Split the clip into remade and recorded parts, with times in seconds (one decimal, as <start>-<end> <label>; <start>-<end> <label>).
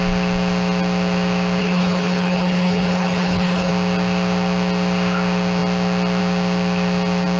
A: 0.0-1.6 recorded; 1.6-3.7 remade; 3.7-7.4 recorded